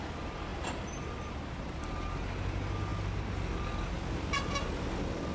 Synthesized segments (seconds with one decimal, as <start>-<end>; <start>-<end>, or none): none